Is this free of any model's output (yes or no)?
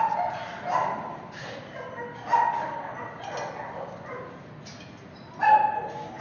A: yes